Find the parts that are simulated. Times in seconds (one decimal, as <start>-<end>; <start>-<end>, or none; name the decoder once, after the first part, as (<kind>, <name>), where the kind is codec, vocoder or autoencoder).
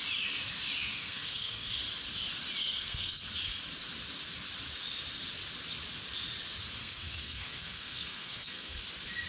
0.9-1.7 (codec, SNAC); 2.6-3.2; 6.8-8.8